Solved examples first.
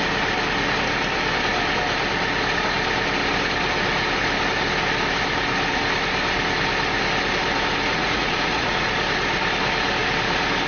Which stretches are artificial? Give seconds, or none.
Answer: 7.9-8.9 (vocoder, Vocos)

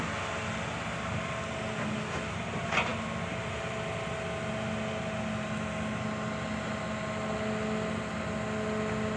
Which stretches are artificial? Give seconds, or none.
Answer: none

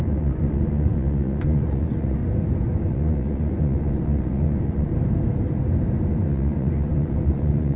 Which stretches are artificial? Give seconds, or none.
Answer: 0.0-2.2 (vocoder, Vocos); 2.8-4.9; 6.1-7.8